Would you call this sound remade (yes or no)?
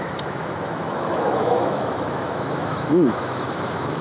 yes